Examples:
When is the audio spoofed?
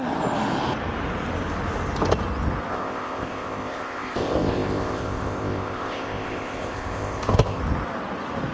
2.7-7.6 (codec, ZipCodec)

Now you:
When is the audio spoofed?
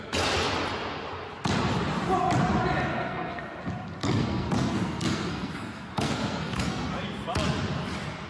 2.9-3.6 (codec, SNAC); 4.0-6.9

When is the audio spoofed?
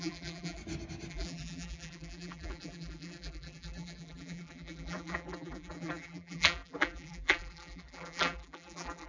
0.0-0.6 (vocoder, BigVGAN v2); 1.1-9.1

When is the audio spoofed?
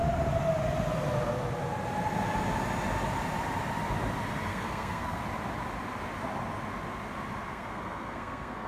4.5-5.2 (codec, SNAC); 7.5-8.7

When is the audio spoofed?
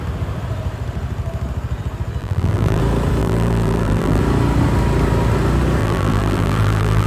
2.2-2.8 (vocoder, BigVGAN v2); 3.2-4.2; 5.8-7.1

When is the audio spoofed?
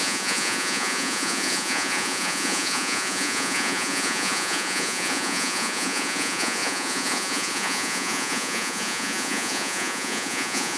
0.0-10.8 (vocoder, Vocos)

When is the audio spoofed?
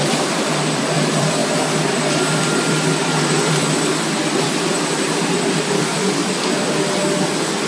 0.0-1.4 (vocoder, BigVGAN v2); 2.2-2.9; 3.5-6.2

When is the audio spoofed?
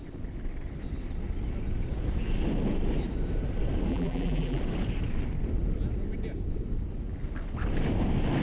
3.9-4.6 (vocoder, BigVGAN v2)